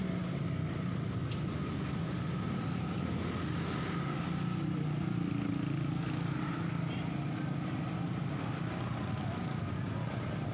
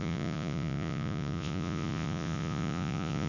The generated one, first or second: second